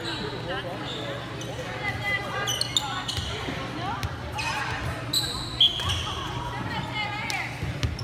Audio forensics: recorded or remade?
recorded